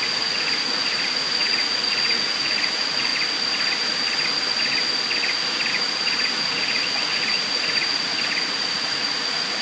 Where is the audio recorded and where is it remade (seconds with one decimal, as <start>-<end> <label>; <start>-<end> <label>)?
0.0-3.1 remade; 3.1-5.7 recorded; 5.7-9.6 remade